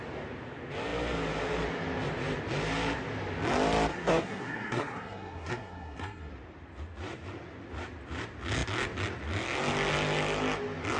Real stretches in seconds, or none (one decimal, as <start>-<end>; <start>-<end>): 0.0-3.9; 6.3-11.0